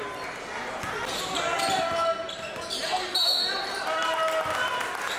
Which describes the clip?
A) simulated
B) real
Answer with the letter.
B